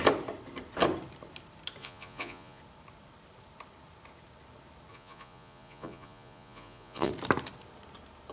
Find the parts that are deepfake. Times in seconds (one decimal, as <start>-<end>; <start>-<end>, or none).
1.8-2.6; 4.9-7.1